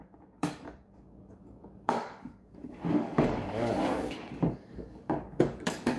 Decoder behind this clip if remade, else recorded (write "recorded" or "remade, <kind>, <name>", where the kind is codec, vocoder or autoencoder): remade, codec, DAC